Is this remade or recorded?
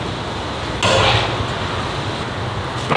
recorded